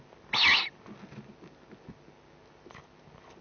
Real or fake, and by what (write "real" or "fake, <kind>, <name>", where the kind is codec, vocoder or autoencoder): real